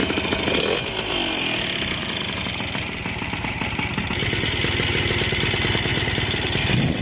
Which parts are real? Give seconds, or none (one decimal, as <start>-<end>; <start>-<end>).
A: 0.0-7.0